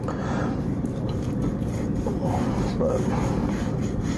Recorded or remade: remade